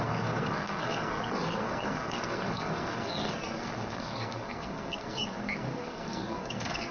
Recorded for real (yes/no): no